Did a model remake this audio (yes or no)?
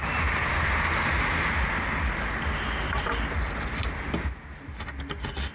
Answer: no